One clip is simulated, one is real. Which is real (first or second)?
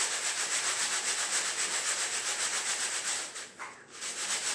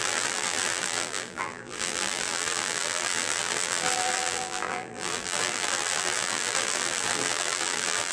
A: first